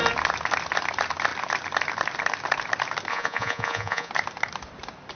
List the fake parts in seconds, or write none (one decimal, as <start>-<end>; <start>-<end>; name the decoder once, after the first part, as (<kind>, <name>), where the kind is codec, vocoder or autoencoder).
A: 3.1-4.1 (vocoder, Vocos)